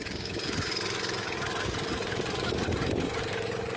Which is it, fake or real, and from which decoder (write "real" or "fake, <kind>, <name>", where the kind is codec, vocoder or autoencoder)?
fake, codec, DAC